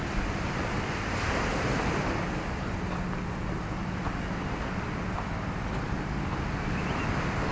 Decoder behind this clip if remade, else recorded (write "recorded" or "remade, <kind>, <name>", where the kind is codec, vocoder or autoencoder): recorded